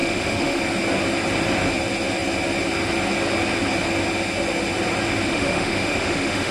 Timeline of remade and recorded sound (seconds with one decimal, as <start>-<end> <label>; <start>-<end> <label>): 0.0-0.6 remade; 0.6-5.3 recorded; 5.3-6.5 remade